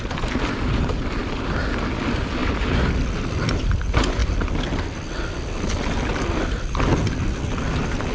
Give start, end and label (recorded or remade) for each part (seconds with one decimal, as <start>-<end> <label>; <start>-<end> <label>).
0.0-8.1 recorded